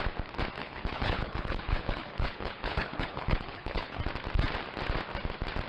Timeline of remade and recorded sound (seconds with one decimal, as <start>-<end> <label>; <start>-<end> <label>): 0.0-0.6 recorded; 0.6-4.0 remade; 4.0-5.7 recorded

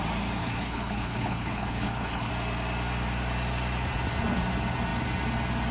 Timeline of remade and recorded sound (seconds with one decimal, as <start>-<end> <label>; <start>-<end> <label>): 0.0-0.4 recorded; 0.4-2.3 remade; 2.3-5.7 recorded

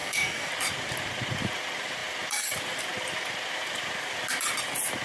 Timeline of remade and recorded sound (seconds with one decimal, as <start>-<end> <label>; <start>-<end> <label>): 0.0-0.5 remade; 0.5-5.0 recorded

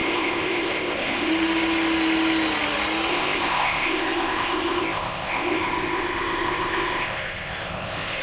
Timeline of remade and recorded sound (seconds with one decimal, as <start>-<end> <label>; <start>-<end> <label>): 0.0-1.3 remade; 1.3-3.1 recorded; 3.1-8.2 remade

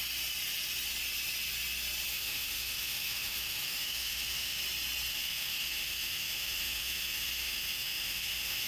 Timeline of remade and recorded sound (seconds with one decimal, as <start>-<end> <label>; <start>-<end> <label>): 0.0-2.1 recorded; 2.1-4.6 remade; 4.6-5.1 recorded; 5.1-8.7 remade

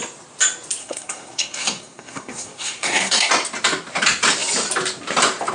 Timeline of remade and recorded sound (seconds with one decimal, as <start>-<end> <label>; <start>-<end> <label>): 0.0-0.8 recorded; 0.8-3.3 remade; 3.3-5.5 recorded